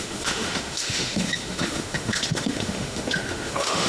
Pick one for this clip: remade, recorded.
remade